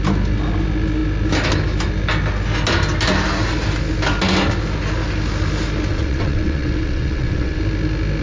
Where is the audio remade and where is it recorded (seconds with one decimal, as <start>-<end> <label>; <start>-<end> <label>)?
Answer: 0.0-5.9 recorded; 5.9-7.6 remade; 7.6-8.2 recorded